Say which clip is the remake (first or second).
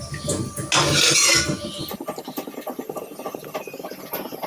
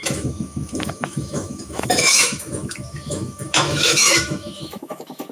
second